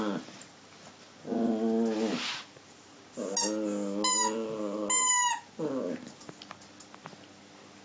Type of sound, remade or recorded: recorded